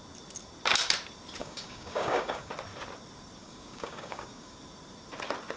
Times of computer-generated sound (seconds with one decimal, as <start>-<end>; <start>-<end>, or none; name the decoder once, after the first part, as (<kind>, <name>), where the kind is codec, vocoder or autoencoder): 1.4-2.5 (codec, DAC); 3.4-4.6

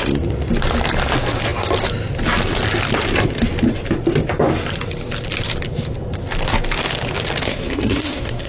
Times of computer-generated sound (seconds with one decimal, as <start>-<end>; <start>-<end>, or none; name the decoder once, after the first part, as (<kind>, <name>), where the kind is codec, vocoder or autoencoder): 7.5-8.5 (codec, SNAC)

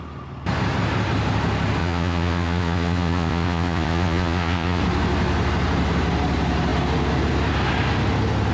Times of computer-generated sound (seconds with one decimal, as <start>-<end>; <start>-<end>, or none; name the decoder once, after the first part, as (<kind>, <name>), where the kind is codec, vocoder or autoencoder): 1.8-4.8 (vocoder, Vocos)

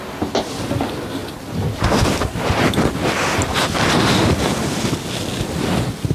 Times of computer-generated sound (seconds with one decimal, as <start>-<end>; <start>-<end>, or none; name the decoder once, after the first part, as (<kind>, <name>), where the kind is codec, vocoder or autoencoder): 1.2-4.9 (vocoder, BigVGAN v2)

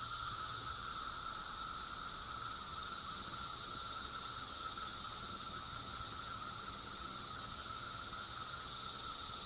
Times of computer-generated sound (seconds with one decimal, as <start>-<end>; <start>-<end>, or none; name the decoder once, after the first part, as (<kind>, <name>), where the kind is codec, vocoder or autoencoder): 0.0-0.9 (vocoder, HiFi-GAN); 2.3-9.5